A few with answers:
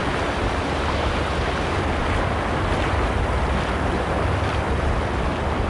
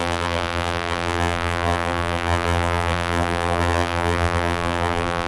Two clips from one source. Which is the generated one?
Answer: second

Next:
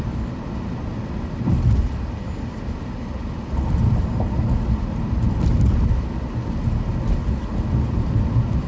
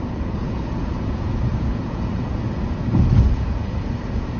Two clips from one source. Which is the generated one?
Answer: second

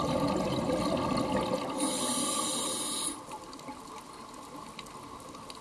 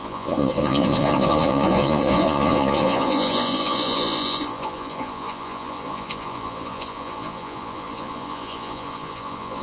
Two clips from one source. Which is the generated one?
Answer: second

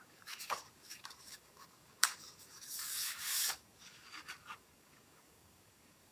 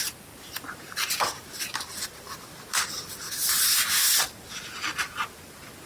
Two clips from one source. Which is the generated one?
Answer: first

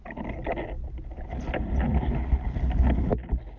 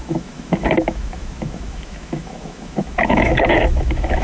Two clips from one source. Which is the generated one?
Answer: second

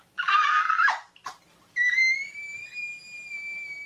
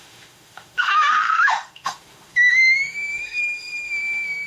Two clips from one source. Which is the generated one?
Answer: second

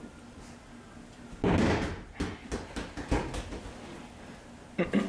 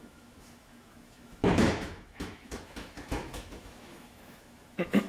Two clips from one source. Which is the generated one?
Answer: second